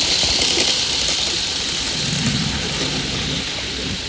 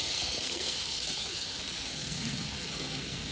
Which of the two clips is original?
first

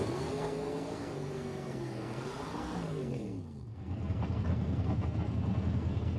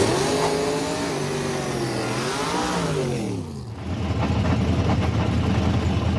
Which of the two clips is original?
second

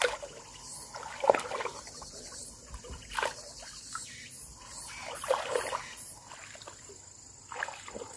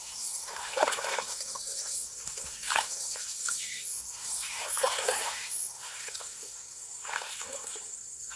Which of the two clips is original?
first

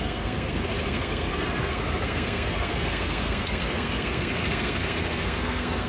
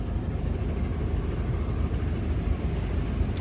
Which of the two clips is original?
second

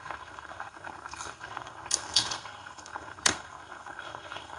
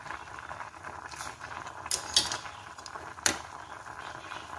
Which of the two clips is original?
second